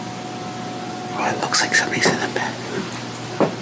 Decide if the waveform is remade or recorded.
recorded